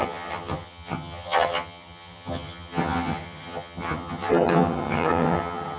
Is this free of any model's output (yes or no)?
no